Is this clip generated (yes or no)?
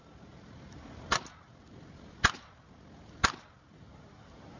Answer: no